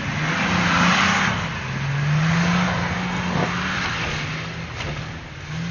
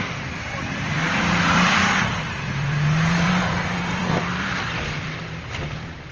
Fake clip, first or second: second